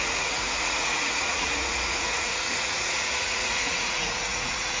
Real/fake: fake